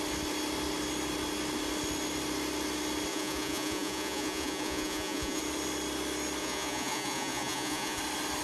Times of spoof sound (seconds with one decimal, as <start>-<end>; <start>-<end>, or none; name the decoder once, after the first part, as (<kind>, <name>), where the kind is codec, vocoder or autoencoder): 3.1-5.4 (vocoder, Vocos); 6.4-8.0